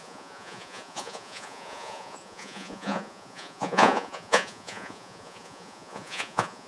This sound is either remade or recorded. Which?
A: remade